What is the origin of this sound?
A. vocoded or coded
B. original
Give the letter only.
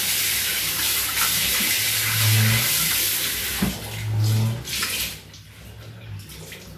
B